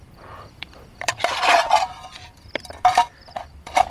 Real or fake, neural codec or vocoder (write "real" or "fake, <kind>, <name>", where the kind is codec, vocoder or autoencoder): fake, vocoder, BigVGAN v2